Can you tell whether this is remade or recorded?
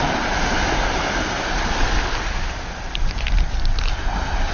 recorded